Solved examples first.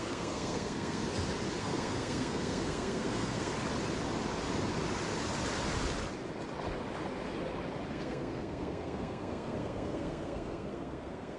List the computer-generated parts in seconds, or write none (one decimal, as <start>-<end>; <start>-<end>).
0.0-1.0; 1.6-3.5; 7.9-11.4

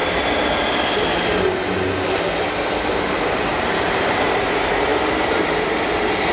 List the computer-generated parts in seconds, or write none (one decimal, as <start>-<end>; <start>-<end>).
3.3-4.9

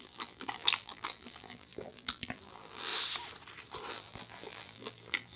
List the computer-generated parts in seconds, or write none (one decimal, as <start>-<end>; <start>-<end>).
0.0-2.9; 3.9-5.4